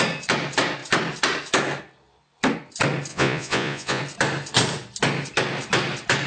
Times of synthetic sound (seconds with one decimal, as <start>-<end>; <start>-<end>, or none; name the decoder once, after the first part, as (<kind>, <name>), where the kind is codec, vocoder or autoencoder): 3.1-4.0 (vocoder, Vocos)